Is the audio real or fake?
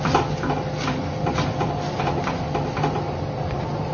real